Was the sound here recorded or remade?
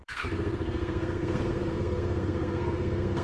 remade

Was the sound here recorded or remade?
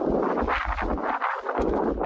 recorded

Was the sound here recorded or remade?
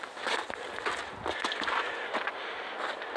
recorded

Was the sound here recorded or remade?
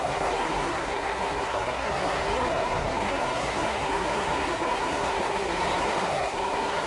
remade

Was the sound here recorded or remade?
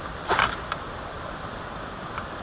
recorded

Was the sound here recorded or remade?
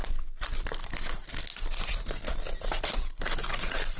recorded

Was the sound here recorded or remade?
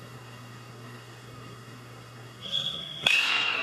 remade